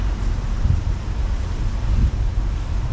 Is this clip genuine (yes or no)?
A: no